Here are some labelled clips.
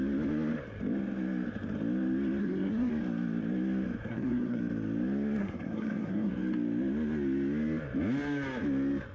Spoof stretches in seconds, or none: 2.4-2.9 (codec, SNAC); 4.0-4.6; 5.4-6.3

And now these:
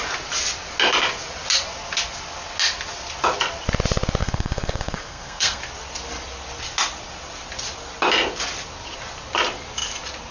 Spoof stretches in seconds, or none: 4.2-5.6 (codec, SNAC)

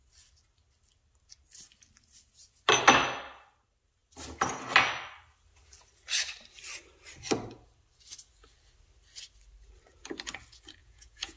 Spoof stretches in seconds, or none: 10.8-11.4 (vocoder, Vocos)

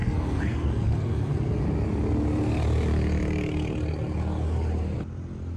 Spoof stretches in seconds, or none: 0.0-1.6 (codec, SNAC)

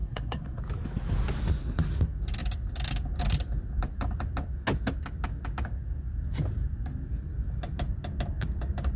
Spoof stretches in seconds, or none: 0.0-0.6 (codec, SNAC)

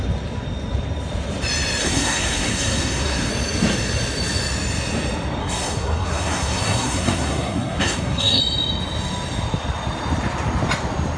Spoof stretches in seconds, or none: 1.8-3.3 (codec, SNAC); 5.4-8.4

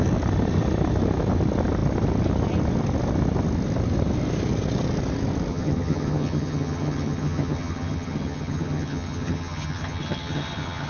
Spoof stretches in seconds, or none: 5.5-10.9 (vocoder, HiFi-GAN)

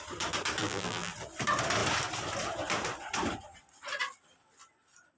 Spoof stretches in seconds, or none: 0.6-1.1 (vocoder, BigVGAN v2)